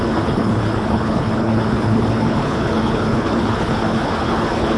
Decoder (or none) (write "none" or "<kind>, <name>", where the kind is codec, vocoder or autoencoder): codec, HILCodec